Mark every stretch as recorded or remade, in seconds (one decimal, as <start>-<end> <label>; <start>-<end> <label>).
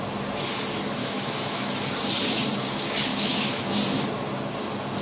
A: 0.0-1.0 recorded; 1.0-1.7 remade; 1.7-3.1 recorded; 3.1-3.6 remade; 3.6-5.0 recorded